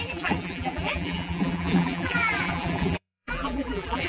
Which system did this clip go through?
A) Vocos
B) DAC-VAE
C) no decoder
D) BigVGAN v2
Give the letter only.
D